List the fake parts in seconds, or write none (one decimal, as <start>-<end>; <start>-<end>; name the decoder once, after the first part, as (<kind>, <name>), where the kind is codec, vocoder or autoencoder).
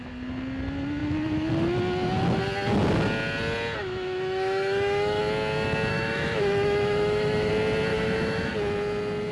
3.8-5.2 (autoencoder, DAC-VAE); 5.9-7.5; 7.9-8.5